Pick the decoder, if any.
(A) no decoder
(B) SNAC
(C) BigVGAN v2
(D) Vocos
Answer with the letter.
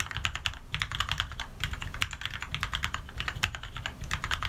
A